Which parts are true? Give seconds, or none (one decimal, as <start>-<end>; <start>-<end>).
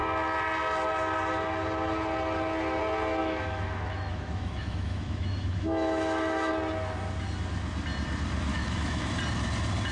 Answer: 0.0-3.2; 6.5-8.5; 9.1-9.9